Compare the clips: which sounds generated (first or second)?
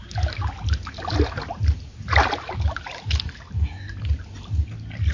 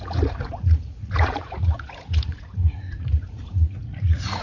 second